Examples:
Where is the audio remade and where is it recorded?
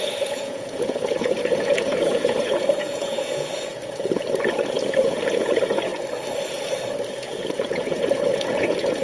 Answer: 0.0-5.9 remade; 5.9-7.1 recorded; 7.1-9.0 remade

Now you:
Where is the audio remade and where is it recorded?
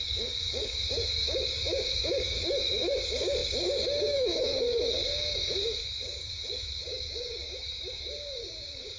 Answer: 0.0-9.0 remade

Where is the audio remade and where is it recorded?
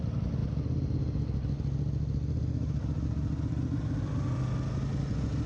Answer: 0.0-5.5 recorded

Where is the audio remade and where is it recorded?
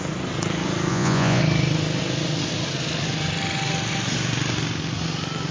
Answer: 0.0-0.9 recorded; 0.9-1.4 remade; 1.4-5.5 recorded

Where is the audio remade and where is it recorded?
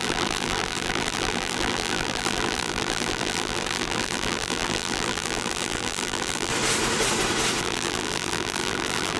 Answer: 0.0-6.5 remade; 6.5-7.6 recorded; 7.6-9.2 remade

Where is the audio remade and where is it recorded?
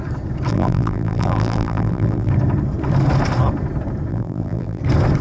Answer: 0.0-0.5 recorded; 0.5-2.3 remade; 2.3-4.1 recorded; 4.1-4.8 remade; 4.8-5.2 recorded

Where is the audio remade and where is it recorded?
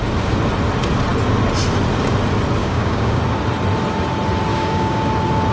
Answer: 0.0-2.6 recorded; 2.6-3.2 remade; 3.2-4.5 recorded; 4.5-5.1 remade; 5.1-5.5 recorded